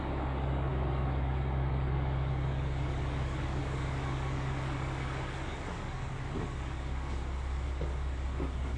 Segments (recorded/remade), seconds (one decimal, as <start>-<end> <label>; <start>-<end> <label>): 0.0-8.8 remade